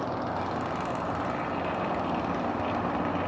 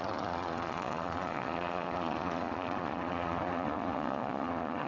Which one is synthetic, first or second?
second